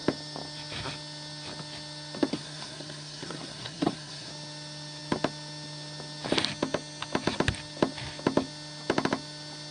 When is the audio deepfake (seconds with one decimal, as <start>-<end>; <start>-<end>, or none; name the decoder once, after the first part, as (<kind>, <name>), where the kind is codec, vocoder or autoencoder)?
2.3-4.3 (codec, SNAC)